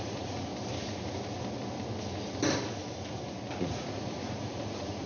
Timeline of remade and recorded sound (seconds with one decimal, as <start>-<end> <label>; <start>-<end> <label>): 0.0-0.5 remade; 0.5-3.6 recorded; 3.6-5.1 remade